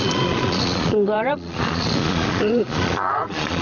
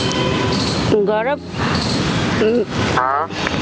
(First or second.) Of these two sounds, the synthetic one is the first